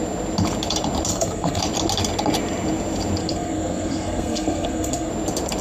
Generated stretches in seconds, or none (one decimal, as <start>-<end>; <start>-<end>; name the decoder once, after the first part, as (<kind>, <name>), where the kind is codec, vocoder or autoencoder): 1.1-1.6 (codec, SNAC); 3.2-5.1

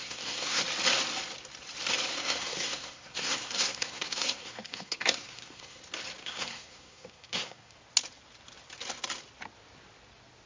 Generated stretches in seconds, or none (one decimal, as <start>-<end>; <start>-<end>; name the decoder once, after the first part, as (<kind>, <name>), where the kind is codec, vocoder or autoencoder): 0.0-0.6 (codec, SNAC); 2.1-5.8; 6.2-7.7